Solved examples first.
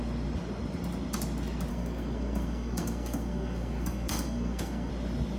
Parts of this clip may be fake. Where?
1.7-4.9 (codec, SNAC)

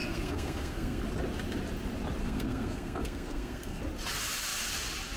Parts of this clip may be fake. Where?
0.0-1.0 (codec, SNAC); 2.2-3.8

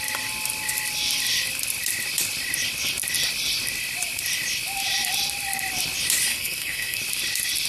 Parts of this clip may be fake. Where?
6.3-7.0 (codec, SNAC)

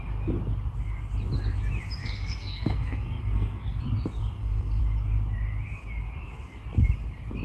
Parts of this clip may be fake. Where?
2.0-3.8 (codec, SNAC); 4.2-4.8

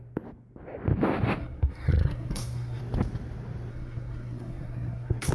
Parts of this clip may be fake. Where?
1.4-2.8 (codec, SNAC); 3.7-5.3

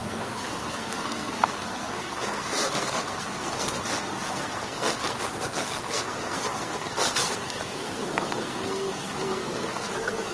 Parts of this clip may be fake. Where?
0.0-10.3 (codec, SNAC)

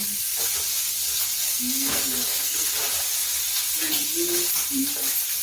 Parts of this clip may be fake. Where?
1.5-2.7 (codec, SNAC)

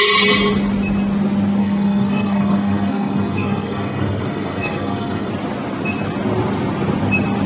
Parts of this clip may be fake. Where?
1.6-5.3 (codec, SNAC)